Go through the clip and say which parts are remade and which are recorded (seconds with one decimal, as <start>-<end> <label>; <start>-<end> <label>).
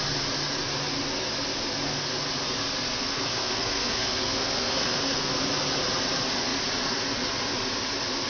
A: 0.0-3.0 recorded; 3.0-5.3 remade; 5.3-8.3 recorded